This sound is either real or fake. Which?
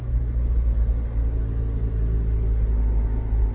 real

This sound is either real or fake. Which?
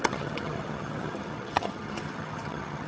fake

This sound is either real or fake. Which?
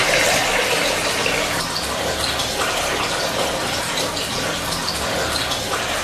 real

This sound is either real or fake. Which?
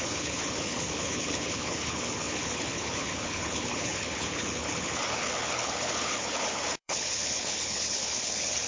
fake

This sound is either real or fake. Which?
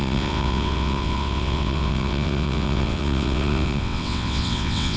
fake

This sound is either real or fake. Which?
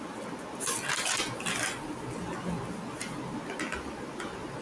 real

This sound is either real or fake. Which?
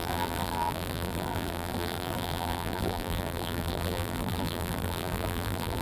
fake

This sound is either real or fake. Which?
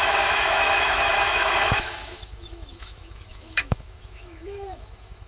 fake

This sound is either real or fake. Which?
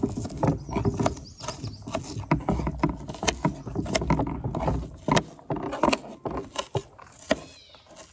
real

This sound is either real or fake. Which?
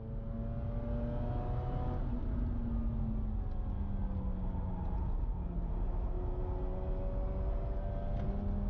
real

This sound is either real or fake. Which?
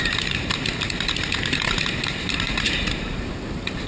fake